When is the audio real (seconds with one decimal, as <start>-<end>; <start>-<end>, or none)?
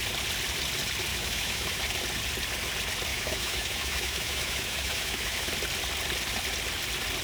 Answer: 0.0-1.1; 1.8-3.1; 5.5-7.2